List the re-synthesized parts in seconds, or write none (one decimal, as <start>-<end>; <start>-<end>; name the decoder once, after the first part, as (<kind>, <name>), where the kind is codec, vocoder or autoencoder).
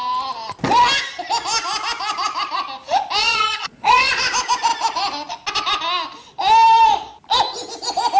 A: 3.2-4.2 (vocoder, Vocos)